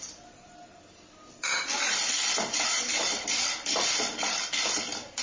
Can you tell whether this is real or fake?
real